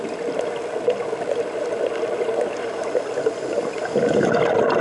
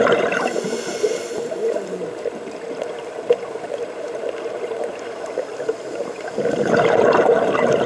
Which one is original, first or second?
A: first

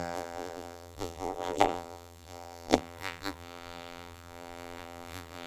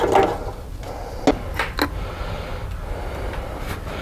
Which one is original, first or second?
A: second